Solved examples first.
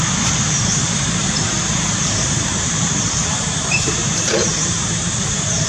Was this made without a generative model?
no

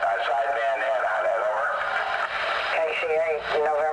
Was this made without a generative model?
yes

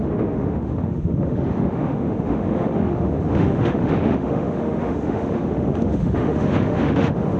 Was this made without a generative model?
no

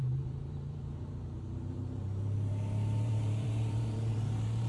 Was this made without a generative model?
no